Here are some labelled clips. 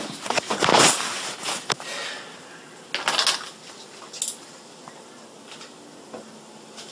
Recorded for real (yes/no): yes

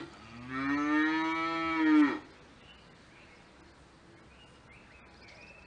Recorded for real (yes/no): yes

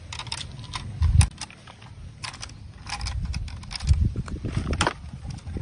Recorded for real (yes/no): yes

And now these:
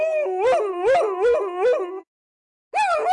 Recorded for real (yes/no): yes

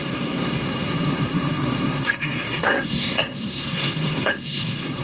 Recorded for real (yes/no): no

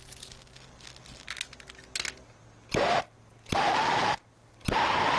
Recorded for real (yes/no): yes